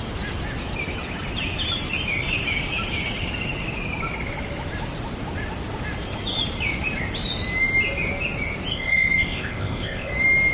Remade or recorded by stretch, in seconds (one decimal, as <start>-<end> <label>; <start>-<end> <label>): 0.0-8.7 recorded; 8.7-10.1 remade; 10.1-10.5 recorded